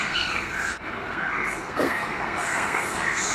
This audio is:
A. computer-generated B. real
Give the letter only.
A